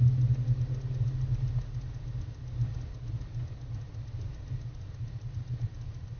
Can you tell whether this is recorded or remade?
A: recorded